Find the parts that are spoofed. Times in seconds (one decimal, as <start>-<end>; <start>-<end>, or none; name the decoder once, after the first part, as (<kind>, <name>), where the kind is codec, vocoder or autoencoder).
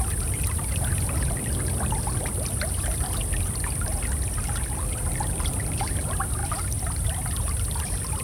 none